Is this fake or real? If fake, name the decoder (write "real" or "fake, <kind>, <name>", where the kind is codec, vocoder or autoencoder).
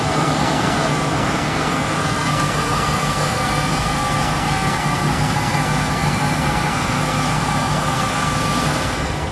fake, codec, SNAC